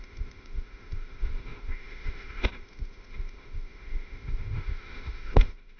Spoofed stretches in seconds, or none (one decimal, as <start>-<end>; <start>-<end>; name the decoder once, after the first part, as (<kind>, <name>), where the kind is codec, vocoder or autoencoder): 0.0-5.8 (autoencoder, DAC-VAE)